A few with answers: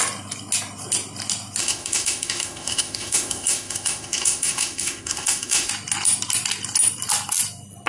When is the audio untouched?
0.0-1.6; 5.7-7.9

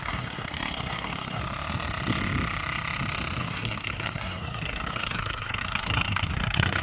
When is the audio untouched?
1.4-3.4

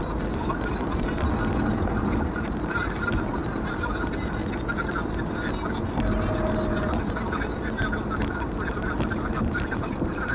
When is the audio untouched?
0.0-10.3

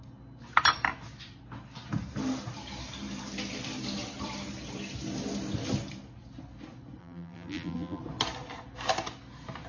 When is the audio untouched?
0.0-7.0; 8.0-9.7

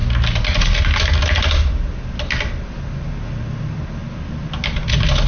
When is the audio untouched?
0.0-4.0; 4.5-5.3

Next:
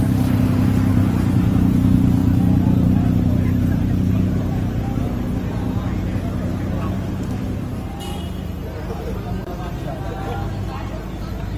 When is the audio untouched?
0.0-0.9; 1.5-2.2; 4.2-11.6